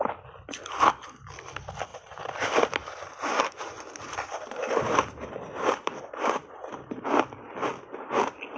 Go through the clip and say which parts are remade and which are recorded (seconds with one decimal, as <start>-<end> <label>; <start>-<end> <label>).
0.0-1.9 recorded; 1.9-7.1 remade; 7.1-8.6 recorded